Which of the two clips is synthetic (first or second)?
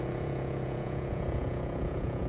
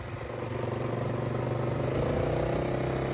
first